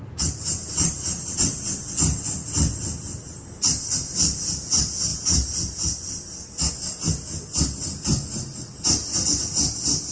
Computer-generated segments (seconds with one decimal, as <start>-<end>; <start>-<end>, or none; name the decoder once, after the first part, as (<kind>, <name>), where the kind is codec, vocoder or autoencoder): none